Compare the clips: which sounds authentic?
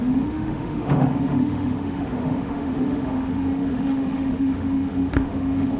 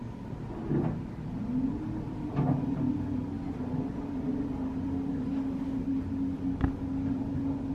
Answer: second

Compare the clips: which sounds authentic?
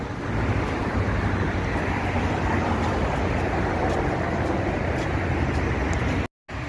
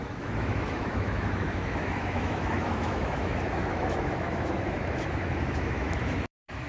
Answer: first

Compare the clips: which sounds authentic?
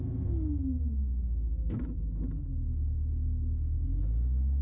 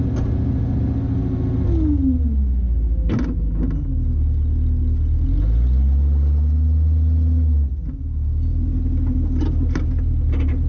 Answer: second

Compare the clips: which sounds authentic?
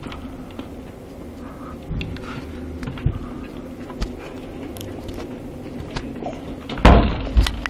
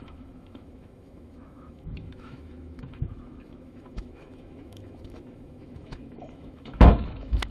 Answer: first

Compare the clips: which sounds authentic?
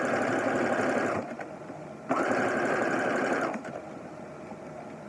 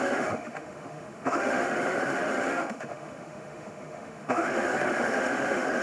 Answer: first